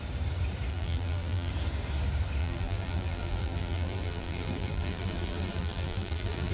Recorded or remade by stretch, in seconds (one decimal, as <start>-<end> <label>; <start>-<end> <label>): 0.0-0.7 recorded; 0.7-1.5 remade; 1.5-2.4 recorded; 2.4-6.5 remade